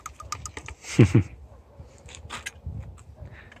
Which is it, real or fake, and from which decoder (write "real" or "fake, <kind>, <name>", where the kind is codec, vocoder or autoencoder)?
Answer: real